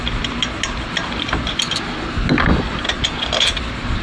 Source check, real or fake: real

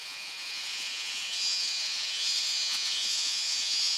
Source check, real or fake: fake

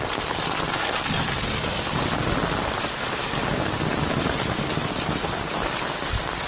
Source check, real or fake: real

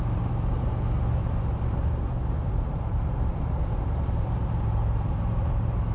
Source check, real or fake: fake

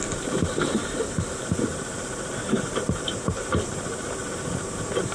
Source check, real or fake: real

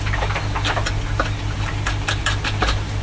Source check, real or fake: real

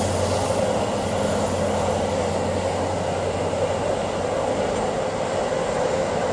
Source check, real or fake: real